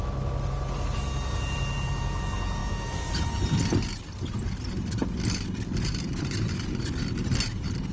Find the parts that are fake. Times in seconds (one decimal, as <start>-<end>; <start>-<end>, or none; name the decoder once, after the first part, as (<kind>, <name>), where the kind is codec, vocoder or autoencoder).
none